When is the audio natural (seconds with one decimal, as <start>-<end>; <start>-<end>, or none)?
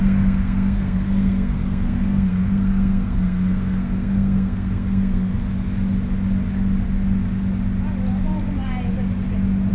5.4-9.7